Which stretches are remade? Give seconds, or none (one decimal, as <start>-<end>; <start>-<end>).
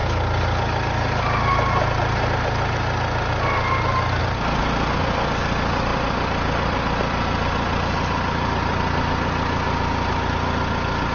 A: none